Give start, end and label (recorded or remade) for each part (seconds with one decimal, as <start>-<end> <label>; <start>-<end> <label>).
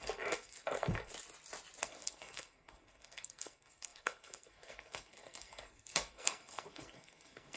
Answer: 0.0-1.1 remade; 1.1-1.8 recorded; 1.8-7.6 remade